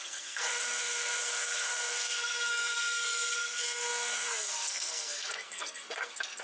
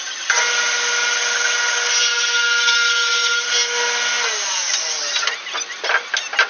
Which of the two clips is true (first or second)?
second